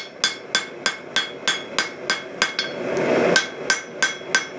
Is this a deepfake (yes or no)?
no